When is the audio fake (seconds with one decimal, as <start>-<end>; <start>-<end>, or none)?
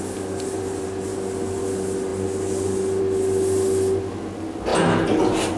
none